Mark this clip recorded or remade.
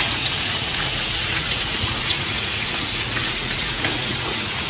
remade